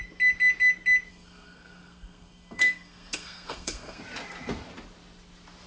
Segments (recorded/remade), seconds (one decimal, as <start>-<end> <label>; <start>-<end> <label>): 0.0-1.1 recorded; 1.1-4.0 remade; 4.0-5.7 recorded